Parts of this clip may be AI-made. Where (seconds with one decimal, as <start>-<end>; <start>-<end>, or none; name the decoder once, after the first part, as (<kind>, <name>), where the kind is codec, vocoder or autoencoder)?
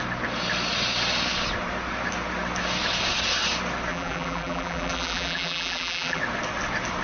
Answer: 3.9-6.2 (vocoder, BigVGAN v2)